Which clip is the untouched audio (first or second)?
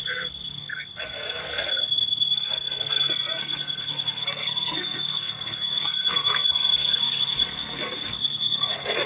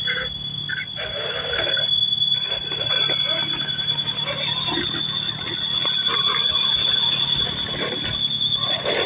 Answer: second